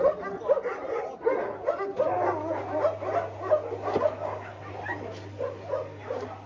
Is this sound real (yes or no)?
yes